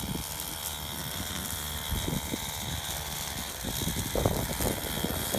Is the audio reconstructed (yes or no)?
no